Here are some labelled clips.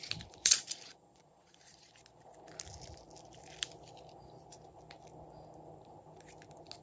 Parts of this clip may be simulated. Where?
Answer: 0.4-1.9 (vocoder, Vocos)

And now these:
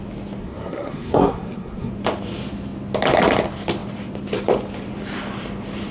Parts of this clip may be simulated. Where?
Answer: 0.4-1.9 (codec, SNAC)